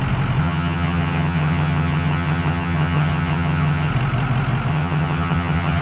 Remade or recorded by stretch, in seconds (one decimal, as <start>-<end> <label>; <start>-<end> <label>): 0.0-0.4 recorded; 0.4-3.9 remade; 3.9-4.7 recorded; 4.7-5.8 remade